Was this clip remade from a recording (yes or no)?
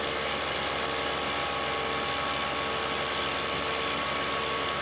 no